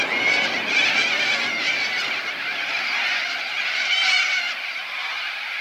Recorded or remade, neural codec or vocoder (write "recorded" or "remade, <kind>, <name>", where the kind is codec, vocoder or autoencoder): remade, vocoder, BigVGAN v2